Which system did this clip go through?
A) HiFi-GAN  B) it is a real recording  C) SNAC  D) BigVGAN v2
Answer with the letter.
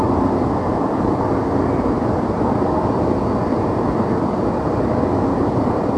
B